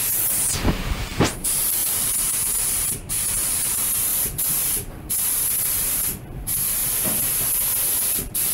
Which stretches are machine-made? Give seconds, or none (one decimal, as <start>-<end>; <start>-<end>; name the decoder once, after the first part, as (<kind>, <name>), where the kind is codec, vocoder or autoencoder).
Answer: 0.0-6.8 (vocoder, BigVGAN v2); 8.1-8.5